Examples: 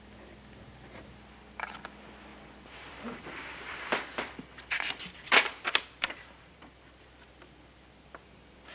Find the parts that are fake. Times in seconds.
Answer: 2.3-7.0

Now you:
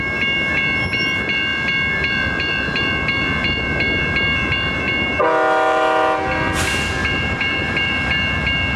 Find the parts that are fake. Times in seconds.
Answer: 7.0-8.1

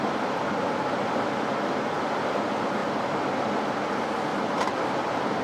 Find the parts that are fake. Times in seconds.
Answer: 4.3-5.4

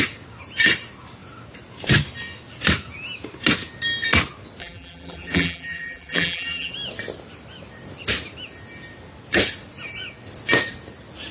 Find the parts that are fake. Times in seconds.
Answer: 4.6-6.7

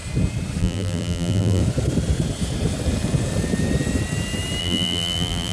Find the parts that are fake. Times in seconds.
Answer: 0.6-1.6; 4.6-5.5

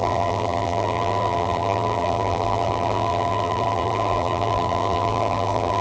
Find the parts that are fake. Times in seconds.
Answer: 0.0-5.8